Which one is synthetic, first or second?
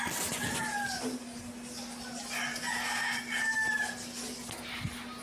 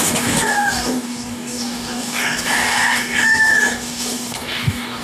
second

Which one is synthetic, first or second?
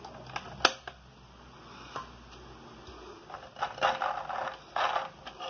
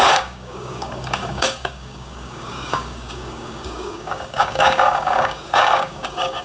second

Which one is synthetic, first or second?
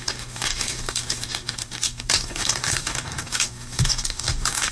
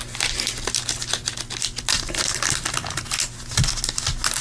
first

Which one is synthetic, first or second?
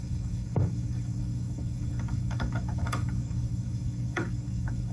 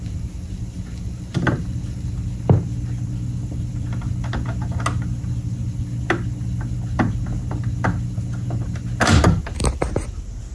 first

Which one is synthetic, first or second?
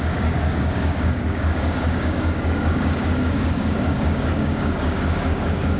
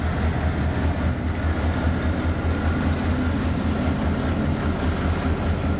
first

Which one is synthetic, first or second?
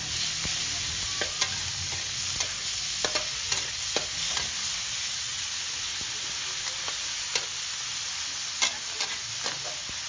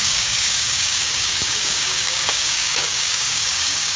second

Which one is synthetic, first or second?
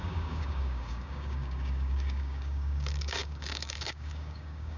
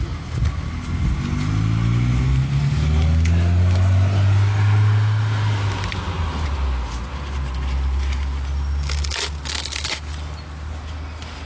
first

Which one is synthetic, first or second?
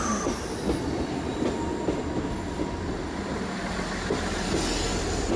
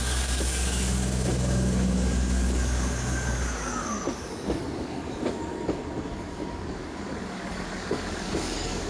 second